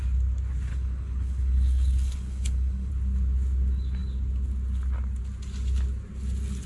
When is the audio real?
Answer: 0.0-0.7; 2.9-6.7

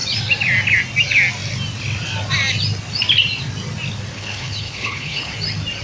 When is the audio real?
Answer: 0.0-4.1; 5.3-5.8

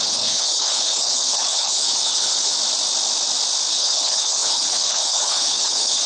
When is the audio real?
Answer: 2.5-3.7